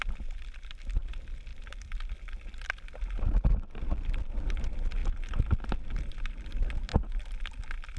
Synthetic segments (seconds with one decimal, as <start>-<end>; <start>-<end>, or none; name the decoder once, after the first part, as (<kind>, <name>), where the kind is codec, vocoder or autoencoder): 1.5-2.7 (vocoder, BigVGAN v2)